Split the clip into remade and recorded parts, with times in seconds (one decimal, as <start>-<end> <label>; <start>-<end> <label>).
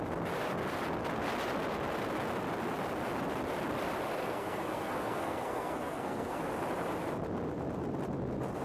0.0-4.2 recorded; 4.2-6.5 remade; 6.5-8.6 recorded